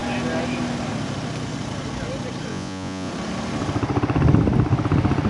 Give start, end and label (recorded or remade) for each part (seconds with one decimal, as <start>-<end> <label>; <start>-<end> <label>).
0.0-2.5 recorded; 2.5-3.1 remade; 3.1-5.3 recorded